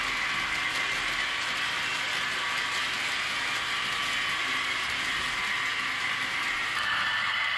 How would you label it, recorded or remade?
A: recorded